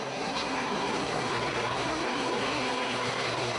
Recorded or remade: remade